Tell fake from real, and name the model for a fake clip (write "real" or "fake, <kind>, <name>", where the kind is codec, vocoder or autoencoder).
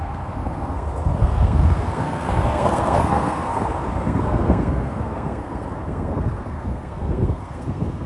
fake, codec, SNAC